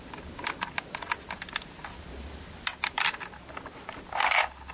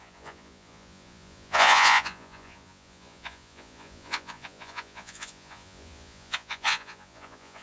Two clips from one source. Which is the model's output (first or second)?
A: second